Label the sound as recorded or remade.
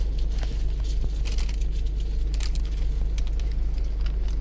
recorded